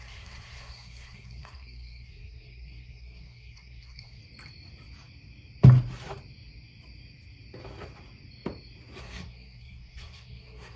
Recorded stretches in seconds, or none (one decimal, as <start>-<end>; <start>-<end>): 4.2-9.0